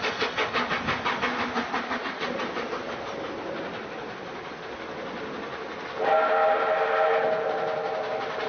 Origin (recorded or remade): recorded